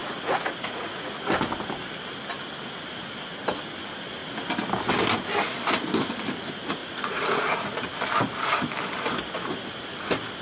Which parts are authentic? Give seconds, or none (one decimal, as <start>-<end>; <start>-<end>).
1.1-6.8; 7.7-10.4